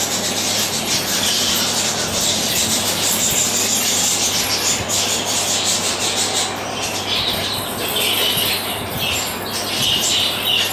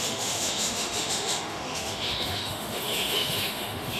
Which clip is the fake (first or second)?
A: second